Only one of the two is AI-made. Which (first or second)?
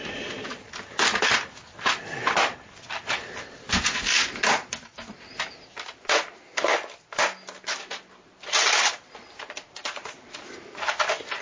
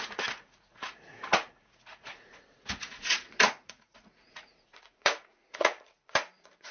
second